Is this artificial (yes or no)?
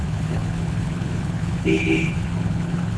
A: yes